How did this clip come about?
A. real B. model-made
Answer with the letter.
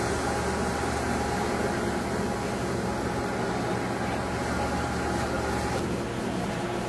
A